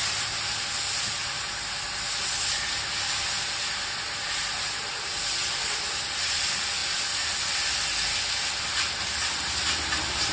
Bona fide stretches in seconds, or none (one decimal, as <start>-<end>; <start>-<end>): 0.0-10.3